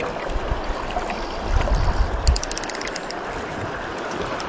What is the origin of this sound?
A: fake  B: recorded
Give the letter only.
B